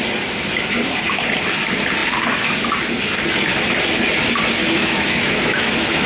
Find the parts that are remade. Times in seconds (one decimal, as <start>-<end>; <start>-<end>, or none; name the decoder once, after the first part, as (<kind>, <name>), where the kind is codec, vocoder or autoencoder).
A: 4.6-6.1 (autoencoder, DAC-VAE)